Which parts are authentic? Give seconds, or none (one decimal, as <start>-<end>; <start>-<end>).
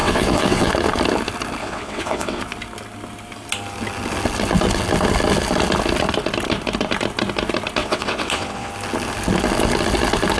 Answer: 0.7-1.6; 2.4-7.8; 8.7-10.4